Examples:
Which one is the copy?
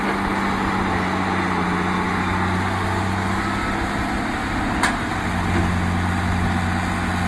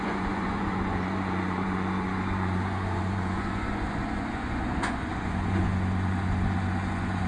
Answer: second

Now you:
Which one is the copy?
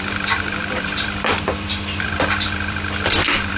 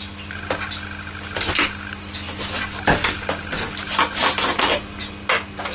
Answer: first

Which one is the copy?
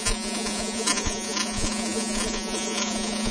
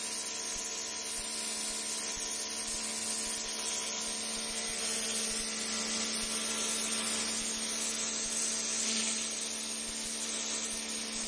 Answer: first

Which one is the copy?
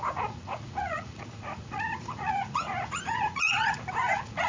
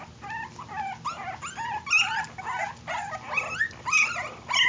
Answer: first